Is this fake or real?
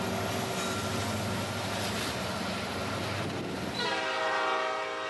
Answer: real